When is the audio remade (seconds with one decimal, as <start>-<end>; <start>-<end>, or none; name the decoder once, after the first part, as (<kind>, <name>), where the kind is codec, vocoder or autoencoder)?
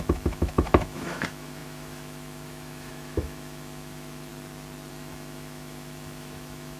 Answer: 0.0-4.3 (autoencoder, DAC-VAE); 4.9-6.8